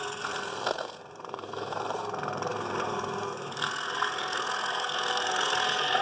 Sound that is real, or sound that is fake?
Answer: fake